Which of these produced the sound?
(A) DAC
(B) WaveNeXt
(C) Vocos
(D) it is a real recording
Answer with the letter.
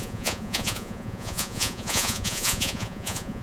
C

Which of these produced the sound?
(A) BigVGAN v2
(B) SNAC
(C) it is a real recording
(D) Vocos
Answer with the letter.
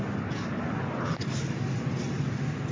C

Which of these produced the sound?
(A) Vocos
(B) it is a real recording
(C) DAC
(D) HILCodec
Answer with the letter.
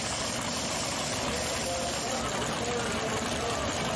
B